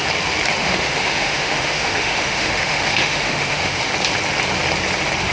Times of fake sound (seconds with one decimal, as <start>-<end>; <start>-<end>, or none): 0.6-3.8